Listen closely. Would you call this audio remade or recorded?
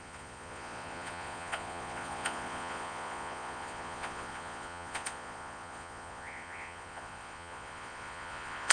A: remade